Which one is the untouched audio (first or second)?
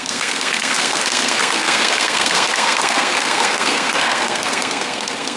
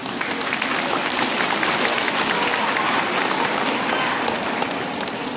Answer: second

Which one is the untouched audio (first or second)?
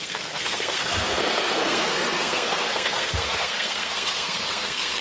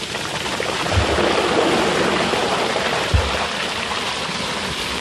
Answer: second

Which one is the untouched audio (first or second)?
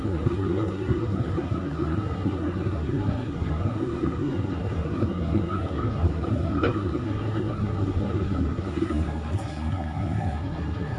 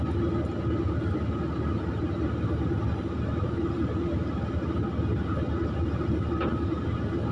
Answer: second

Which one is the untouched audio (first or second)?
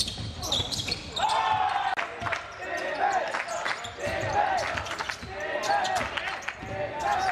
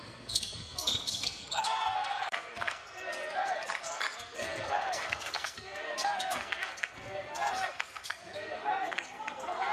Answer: first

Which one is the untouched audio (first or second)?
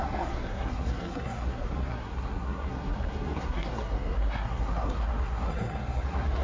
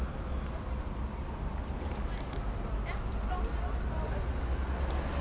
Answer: second